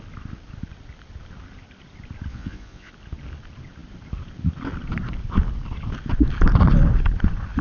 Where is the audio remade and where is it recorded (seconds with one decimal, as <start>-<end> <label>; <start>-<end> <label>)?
0.0-2.3 recorded; 2.3-2.9 remade; 2.9-7.6 recorded